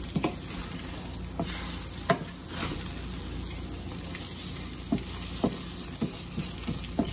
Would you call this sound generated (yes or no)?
no